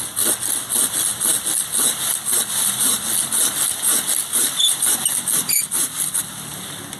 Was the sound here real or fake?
real